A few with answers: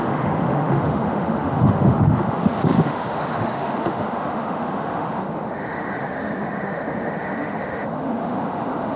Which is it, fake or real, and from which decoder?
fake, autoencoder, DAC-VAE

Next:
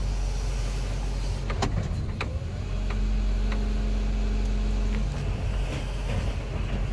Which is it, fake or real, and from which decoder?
real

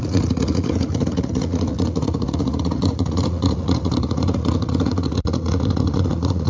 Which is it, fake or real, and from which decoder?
fake, vocoder, Vocos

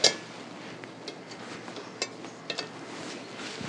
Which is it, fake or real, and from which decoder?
real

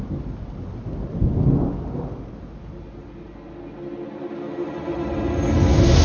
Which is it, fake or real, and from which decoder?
real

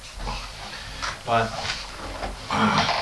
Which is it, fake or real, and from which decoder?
real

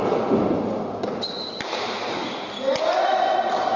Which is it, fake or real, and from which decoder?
real